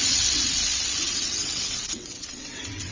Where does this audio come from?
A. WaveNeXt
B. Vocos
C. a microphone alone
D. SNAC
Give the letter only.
A